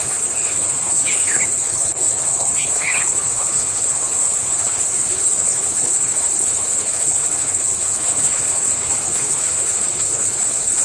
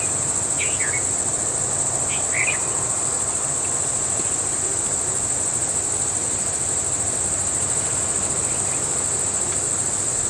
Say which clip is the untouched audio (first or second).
second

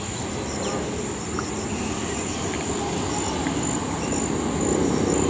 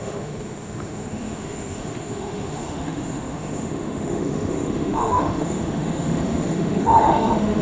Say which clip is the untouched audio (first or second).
first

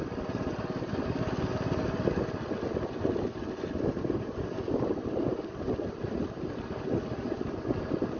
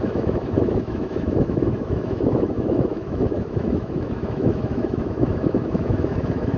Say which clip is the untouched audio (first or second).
first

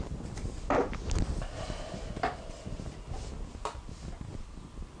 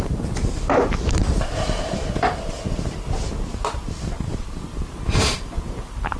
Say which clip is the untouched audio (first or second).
first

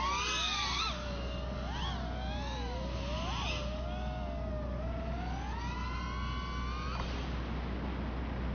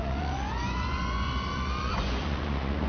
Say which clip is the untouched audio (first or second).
first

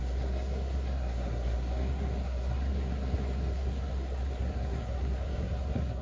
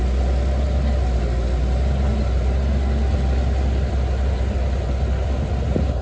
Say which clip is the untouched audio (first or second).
second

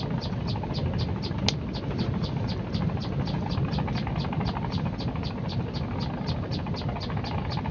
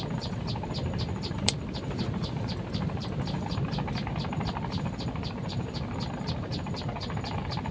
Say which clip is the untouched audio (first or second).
first